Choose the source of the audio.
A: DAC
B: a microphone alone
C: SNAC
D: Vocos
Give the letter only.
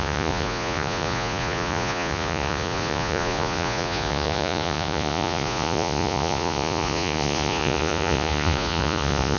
D